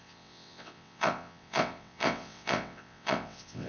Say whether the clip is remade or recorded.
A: remade